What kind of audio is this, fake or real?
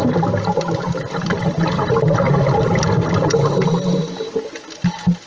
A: real